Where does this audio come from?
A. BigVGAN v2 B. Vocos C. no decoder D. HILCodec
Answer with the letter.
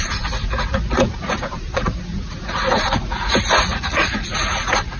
B